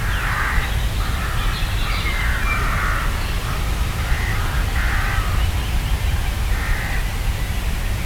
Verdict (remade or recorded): recorded